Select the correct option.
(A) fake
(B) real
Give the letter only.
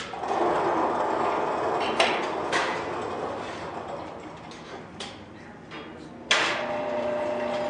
B